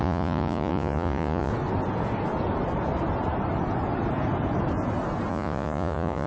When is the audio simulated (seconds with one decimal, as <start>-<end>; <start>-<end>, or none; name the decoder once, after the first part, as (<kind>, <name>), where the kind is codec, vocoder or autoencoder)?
0.0-1.5 (vocoder, Vocos); 5.3-6.3